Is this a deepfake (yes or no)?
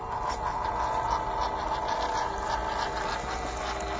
no